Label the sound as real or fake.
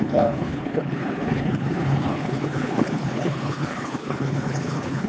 fake